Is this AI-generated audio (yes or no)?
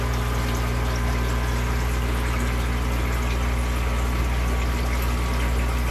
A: no